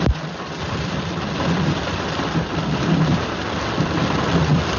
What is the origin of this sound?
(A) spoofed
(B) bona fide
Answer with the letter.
B